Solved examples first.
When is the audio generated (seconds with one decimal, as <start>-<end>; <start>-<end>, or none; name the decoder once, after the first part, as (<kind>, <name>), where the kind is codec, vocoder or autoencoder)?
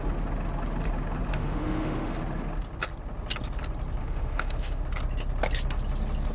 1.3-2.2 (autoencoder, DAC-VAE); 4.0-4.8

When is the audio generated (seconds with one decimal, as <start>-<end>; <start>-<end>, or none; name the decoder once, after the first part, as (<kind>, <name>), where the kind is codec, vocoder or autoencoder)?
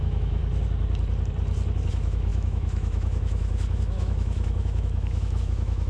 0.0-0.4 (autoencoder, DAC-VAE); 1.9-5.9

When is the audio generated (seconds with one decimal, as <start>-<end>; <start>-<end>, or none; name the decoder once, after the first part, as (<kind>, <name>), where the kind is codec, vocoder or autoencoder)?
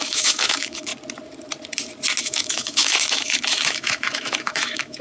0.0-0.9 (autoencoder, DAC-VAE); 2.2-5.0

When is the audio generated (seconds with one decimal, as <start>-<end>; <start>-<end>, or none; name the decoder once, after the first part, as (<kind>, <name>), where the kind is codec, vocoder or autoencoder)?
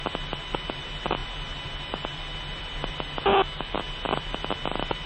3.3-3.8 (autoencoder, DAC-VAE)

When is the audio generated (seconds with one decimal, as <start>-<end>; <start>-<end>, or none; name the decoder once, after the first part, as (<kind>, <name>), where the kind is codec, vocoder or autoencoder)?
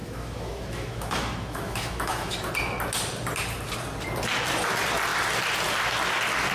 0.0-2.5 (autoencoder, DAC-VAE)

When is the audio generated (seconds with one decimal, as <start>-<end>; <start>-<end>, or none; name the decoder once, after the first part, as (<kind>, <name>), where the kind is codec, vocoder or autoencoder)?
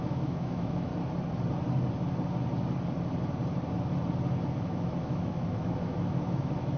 0.0-0.9 (autoencoder, DAC-VAE); 4.5-6.8